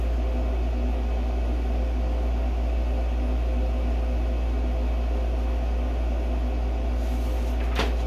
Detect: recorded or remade recorded